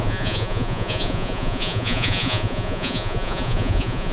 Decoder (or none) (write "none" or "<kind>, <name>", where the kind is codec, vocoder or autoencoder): vocoder, Vocos